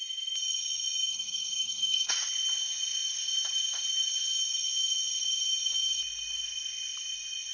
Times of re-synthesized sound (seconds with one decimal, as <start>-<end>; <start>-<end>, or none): 1.1-2.1